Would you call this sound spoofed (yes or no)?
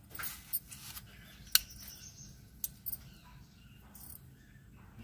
no